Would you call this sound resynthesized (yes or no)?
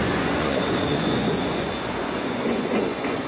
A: yes